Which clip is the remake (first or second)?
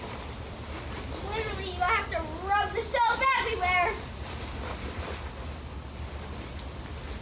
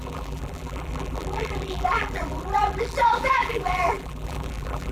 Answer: second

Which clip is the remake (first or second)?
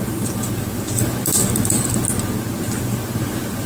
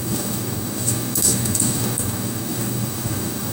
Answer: second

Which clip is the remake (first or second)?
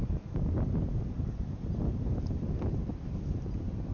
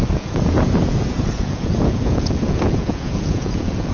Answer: second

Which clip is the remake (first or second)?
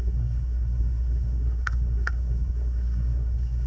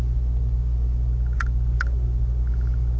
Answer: first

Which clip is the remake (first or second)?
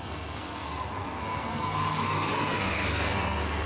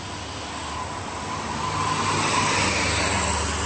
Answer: first